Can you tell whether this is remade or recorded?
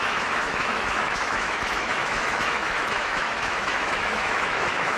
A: remade